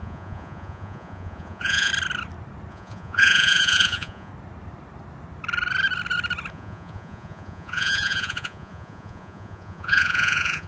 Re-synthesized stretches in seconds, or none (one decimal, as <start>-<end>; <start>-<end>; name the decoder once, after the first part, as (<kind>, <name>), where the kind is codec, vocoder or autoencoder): 0.0-1.9 (vocoder, Vocos); 2.7-4.3; 6.5-10.7